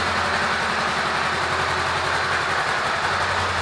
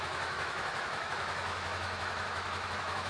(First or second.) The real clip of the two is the first